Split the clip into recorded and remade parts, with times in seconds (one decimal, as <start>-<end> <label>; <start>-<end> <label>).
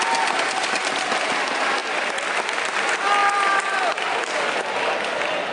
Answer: 0.0-1.8 recorded; 1.8-2.7 remade; 2.7-3.2 recorded; 3.2-4.2 remade; 4.2-5.5 recorded